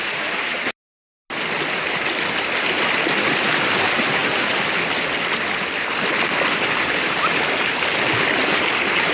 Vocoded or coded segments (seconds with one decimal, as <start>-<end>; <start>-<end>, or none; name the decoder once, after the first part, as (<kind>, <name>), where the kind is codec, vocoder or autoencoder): none